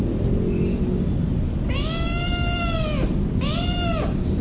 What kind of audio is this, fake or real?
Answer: real